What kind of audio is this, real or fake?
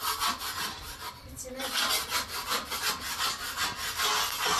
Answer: real